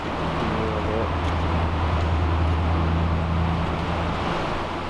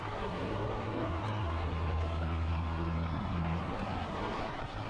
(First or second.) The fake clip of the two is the second